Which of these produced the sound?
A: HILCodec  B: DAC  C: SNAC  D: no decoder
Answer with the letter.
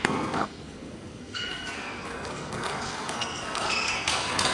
C